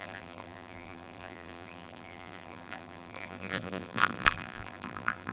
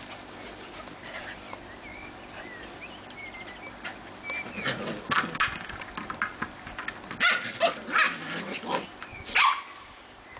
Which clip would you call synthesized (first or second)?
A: first